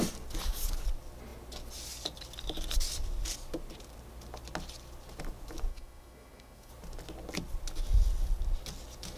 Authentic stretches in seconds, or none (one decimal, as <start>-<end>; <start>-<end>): 0.0-5.7; 6.7-9.2